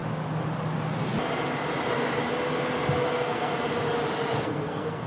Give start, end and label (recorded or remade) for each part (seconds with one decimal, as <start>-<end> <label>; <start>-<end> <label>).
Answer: 0.0-3.1 recorded; 3.1-3.5 remade; 3.5-4.4 recorded; 4.4-5.1 remade